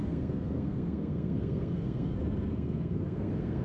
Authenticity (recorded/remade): remade